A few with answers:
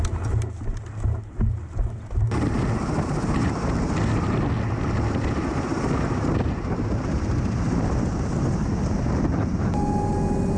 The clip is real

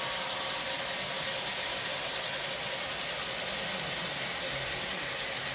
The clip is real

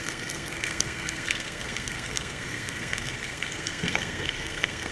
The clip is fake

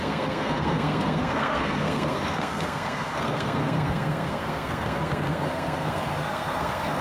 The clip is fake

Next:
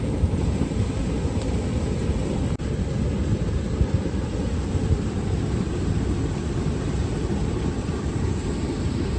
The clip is real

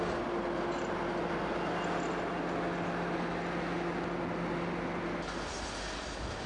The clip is real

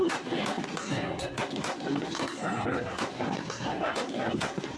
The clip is fake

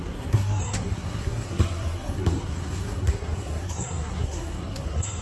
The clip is fake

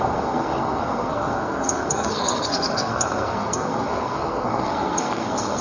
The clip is fake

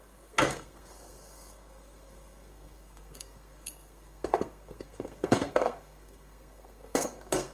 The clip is fake